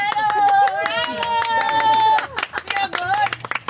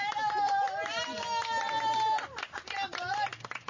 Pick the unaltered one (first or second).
first